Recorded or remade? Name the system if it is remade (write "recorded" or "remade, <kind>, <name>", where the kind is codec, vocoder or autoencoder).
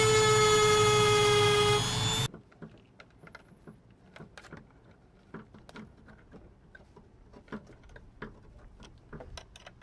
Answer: recorded